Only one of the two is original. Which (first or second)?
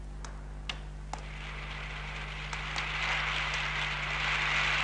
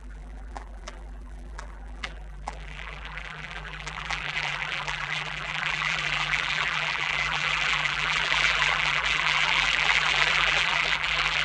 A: first